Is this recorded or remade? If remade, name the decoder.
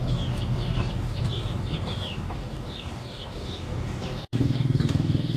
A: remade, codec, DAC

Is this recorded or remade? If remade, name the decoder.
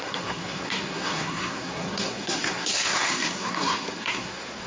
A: remade, codec, SNAC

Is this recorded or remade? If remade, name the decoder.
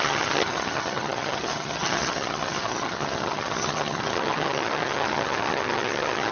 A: remade, vocoder, HiFi-GAN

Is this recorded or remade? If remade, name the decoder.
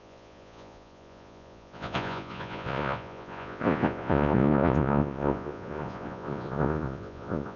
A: remade, vocoder, Vocos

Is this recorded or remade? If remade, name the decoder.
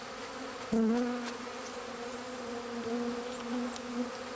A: recorded